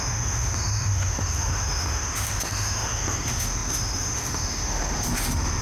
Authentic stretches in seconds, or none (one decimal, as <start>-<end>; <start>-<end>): none